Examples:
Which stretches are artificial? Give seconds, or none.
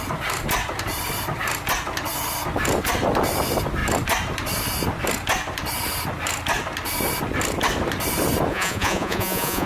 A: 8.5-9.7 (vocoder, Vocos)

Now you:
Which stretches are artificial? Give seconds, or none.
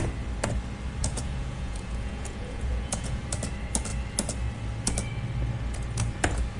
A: 1.0-3.2 (vocoder, Vocos)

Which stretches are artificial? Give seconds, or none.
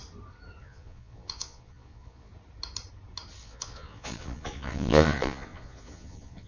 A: 0.6-2.3 (vocoder, Vocos); 3.4-6.5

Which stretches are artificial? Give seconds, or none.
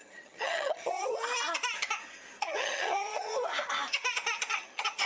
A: 0.0-1.2 (vocoder, HiFi-GAN); 2.4-3.3; 4.5-5.1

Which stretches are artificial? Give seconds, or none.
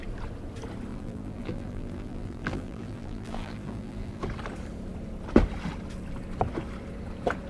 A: 0.9-4.2 (vocoder, BigVGAN v2)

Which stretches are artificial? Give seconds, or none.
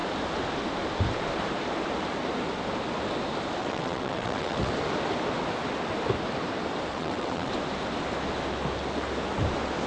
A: 3.6-4.7 (vocoder, WaveNeXt); 6.9-7.5